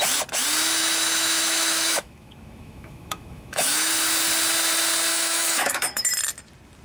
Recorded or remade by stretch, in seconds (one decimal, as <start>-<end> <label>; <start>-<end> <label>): 0.0-0.8 recorded; 0.8-3.9 remade; 3.9-5.1 recorded; 5.1-6.1 remade; 6.1-6.8 recorded